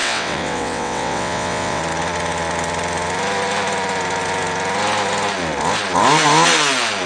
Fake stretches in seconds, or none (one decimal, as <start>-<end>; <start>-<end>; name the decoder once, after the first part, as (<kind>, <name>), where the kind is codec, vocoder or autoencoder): 0.0-1.8 (vocoder, WaveNeXt)